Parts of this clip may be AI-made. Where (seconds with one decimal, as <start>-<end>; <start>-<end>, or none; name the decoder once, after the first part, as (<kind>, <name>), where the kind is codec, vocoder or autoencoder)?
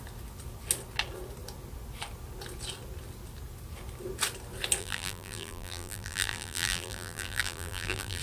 4.8-8.2 (vocoder, BigVGAN v2)